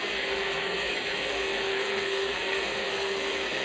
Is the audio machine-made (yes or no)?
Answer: yes